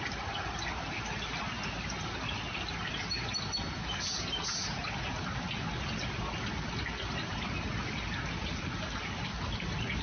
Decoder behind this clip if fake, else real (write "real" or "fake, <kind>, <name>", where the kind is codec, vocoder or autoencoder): real